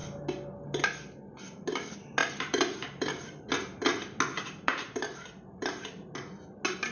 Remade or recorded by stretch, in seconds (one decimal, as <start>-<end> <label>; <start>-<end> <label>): 0.0-2.2 recorded; 2.2-3.5 remade; 3.5-4.3 recorded; 4.3-5.0 remade; 5.0-6.9 recorded